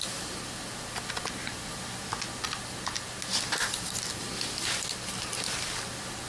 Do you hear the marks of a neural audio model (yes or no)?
no